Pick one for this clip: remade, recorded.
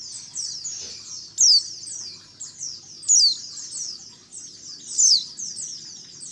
recorded